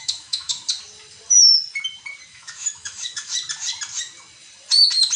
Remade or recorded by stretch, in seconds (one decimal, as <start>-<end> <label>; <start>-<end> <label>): 0.0-0.5 remade; 0.5-2.3 recorded; 2.3-3.3 remade; 3.3-5.2 recorded